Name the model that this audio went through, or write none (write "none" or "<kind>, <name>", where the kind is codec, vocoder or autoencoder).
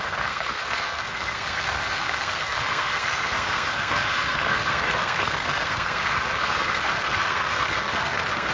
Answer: codec, SNAC